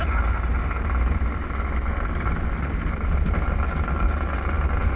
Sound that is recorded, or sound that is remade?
recorded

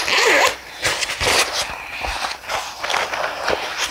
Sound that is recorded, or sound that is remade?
recorded